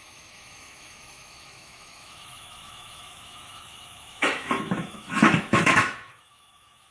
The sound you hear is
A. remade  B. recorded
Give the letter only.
A